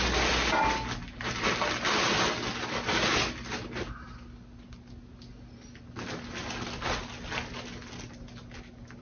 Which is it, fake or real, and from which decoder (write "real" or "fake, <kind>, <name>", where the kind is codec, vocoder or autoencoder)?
real